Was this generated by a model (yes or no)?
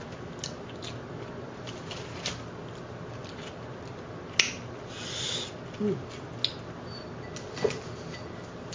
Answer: no